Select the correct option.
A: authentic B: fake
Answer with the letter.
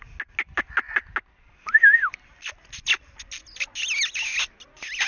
A